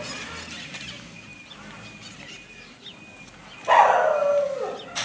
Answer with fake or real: real